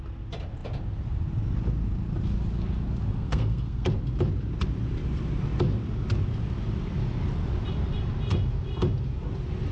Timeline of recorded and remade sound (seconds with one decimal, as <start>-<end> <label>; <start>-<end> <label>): 0.0-3.1 recorded; 3.1-3.9 remade; 3.9-9.7 recorded